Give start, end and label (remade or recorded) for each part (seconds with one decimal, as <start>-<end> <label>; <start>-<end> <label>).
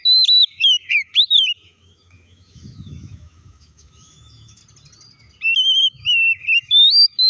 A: 0.0-4.6 remade; 4.6-5.8 recorded; 5.8-7.3 remade